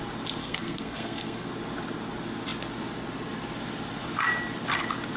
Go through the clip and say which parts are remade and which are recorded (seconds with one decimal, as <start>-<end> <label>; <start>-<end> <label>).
0.0-0.4 recorded; 0.4-1.5 remade; 1.5-5.2 recorded